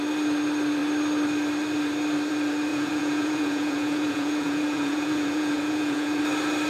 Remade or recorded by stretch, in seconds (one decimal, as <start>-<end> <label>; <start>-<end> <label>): 0.0-2.7 recorded; 2.7-6.2 remade; 6.2-6.7 recorded